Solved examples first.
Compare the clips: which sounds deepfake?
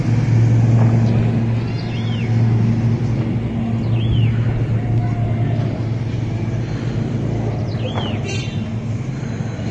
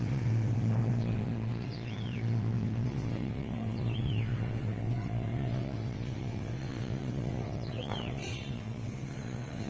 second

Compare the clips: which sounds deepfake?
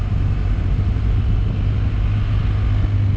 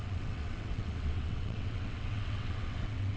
second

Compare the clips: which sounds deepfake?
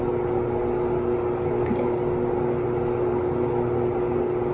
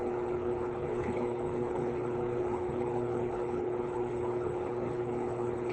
second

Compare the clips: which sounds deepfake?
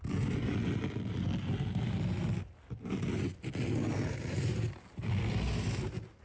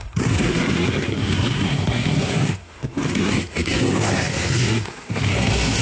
second